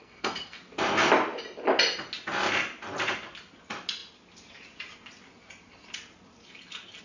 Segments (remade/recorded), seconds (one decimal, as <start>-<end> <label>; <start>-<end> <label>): 0.0-0.6 remade; 0.6-7.0 recorded